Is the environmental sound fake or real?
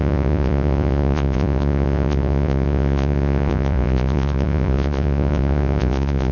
fake